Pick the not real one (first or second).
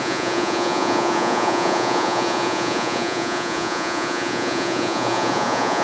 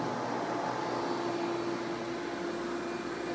first